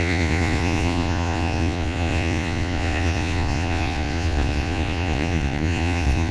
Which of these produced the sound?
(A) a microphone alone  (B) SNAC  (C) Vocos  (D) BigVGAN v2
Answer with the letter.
C